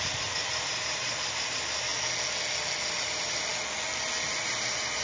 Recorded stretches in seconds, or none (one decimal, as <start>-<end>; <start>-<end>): 1.9-2.9; 3.5-4.5